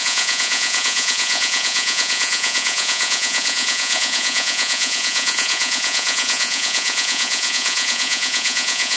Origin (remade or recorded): remade